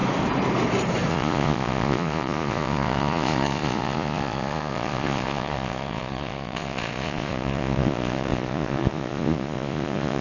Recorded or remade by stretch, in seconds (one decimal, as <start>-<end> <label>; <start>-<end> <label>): 0.0-1.1 recorded; 1.1-10.2 remade